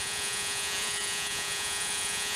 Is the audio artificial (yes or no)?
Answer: yes